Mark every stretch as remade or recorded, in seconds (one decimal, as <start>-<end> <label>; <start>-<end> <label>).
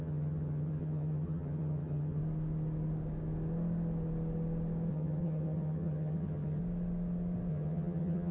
0.0-2.2 remade; 2.2-4.9 recorded; 4.9-6.6 remade; 6.6-7.5 recorded; 7.5-8.3 remade